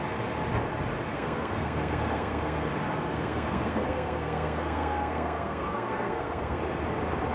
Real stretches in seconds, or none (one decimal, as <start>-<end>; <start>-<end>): 0.0-1.1; 2.7-3.1; 6.6-7.3